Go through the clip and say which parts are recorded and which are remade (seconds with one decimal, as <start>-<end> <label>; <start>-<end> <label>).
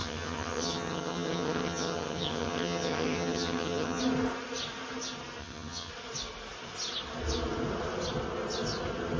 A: 0.0-4.0 remade; 4.0-5.4 recorded; 5.4-5.9 remade; 5.9-9.2 recorded